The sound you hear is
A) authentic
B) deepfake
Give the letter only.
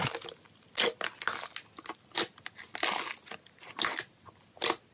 A